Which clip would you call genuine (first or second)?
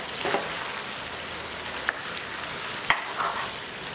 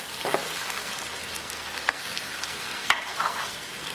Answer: first